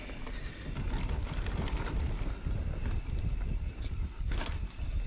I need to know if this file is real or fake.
real